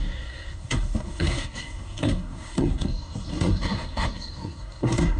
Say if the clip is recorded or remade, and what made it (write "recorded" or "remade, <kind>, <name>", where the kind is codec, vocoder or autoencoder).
remade, codec, SNAC